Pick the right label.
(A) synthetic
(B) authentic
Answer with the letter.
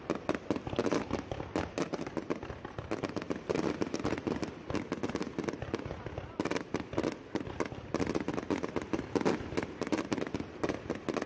B